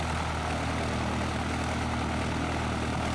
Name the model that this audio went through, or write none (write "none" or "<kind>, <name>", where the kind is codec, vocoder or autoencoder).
none